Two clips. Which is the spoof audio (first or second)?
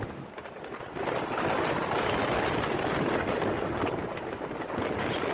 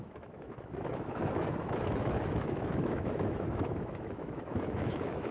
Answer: second